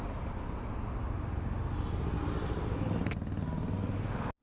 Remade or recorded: recorded